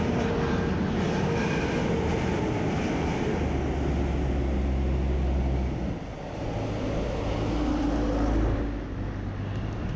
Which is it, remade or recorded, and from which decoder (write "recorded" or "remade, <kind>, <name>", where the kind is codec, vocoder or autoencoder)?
recorded